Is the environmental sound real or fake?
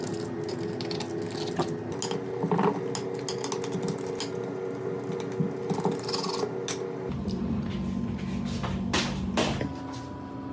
real